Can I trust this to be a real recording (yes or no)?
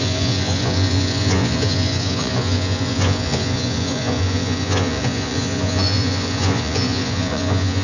no